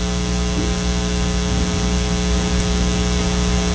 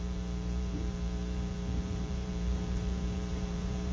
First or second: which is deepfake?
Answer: second